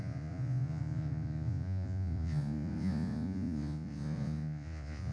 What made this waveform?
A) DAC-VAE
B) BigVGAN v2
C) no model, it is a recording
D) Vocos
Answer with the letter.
D